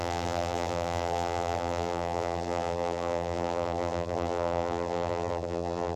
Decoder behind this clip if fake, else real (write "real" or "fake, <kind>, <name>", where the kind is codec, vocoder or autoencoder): fake, vocoder, BigVGAN v2